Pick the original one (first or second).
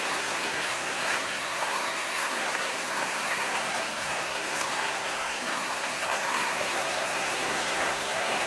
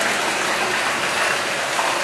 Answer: second